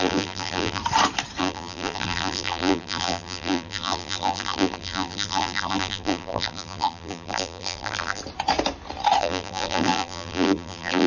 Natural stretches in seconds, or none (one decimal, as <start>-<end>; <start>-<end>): 0.8-1.4; 8.2-9.2